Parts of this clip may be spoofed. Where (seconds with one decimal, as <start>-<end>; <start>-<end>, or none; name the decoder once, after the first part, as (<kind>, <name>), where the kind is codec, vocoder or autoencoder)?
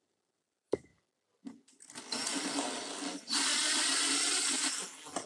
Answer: 0.0-0.9 (vocoder, BigVGAN v2); 2.3-3.5